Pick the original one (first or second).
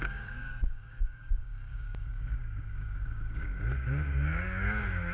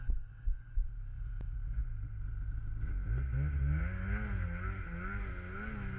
second